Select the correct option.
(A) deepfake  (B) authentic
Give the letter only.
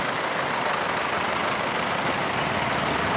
B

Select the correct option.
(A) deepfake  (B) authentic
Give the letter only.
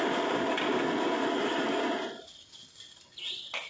B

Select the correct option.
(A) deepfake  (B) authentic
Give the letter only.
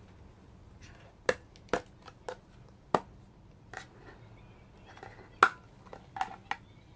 B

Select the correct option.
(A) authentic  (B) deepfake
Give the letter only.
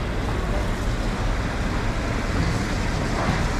A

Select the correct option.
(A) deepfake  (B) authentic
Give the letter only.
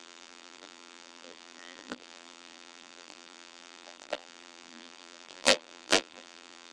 A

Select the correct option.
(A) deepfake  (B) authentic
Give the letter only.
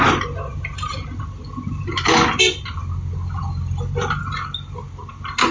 B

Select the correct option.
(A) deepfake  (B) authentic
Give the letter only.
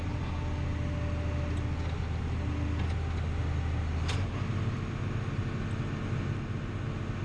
B